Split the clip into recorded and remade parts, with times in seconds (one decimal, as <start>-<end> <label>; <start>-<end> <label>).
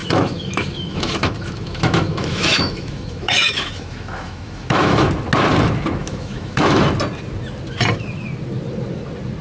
0.0-5.1 remade; 5.1-6.0 recorded; 6.0-6.8 remade; 6.8-9.4 recorded